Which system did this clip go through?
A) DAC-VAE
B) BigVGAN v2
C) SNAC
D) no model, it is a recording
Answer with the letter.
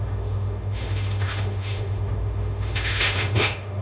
A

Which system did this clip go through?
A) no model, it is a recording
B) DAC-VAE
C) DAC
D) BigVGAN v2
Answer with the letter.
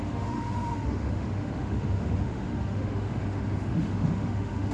B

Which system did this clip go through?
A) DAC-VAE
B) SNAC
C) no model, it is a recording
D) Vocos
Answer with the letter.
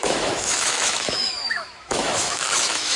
A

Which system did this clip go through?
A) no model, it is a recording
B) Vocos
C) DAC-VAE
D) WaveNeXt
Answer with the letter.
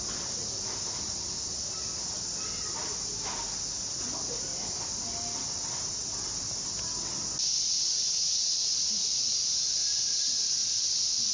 A